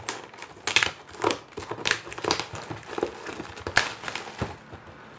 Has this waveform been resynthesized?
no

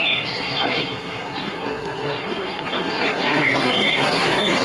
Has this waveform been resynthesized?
yes